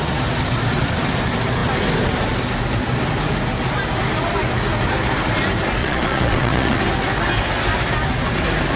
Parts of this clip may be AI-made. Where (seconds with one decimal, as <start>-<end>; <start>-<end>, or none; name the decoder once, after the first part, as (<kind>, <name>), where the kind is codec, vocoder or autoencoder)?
5.8-6.8 (vocoder, Vocos)